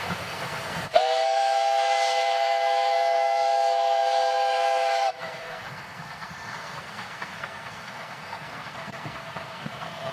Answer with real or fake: fake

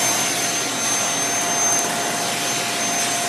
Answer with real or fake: real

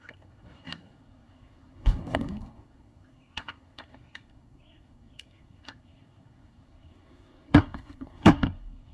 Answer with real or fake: fake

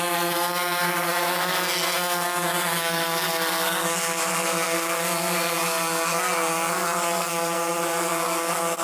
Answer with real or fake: fake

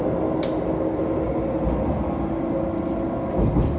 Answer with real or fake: real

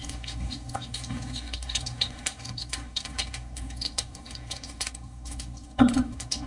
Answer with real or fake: fake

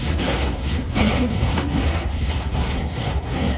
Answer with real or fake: fake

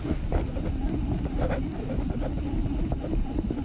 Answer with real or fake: real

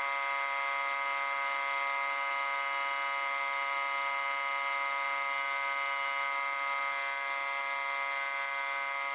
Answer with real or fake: real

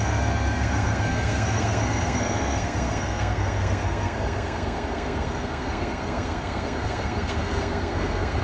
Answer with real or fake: fake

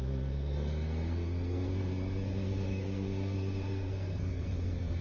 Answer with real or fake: fake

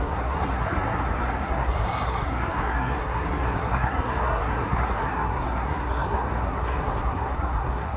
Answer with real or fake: fake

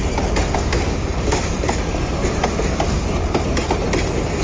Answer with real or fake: real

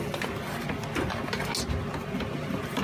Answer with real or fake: real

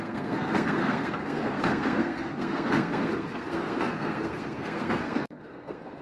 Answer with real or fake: fake